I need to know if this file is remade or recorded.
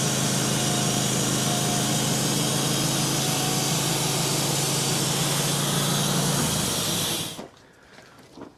recorded